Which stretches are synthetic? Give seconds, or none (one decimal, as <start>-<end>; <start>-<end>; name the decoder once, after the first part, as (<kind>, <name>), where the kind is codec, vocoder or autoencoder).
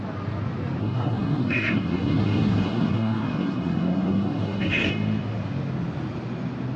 0.8-4.9 (codec, SNAC)